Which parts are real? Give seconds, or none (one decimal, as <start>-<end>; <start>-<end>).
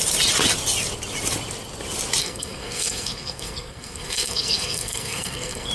0.0-2.2